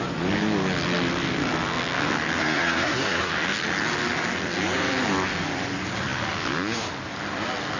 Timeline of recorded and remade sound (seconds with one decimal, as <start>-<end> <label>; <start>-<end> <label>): 0.0-2.4 recorded; 2.4-3.3 remade; 3.3-7.8 recorded